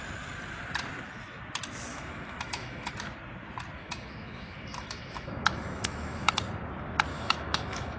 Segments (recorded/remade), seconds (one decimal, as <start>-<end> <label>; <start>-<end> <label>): 0.0-1.9 recorded; 1.9-2.9 remade; 2.9-3.8 recorded; 3.8-6.3 remade; 6.3-7.1 recorded; 7.1-8.0 remade